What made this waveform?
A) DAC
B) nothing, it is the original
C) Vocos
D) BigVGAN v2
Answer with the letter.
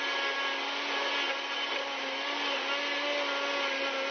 B